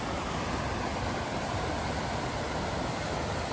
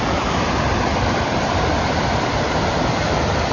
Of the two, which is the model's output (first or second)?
second